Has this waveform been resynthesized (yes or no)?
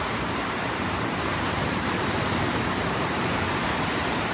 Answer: yes